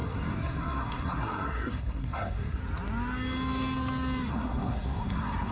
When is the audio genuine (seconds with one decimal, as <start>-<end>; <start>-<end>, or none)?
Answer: 2.6-4.3